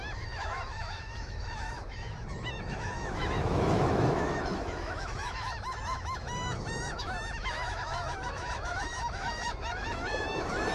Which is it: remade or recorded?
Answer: remade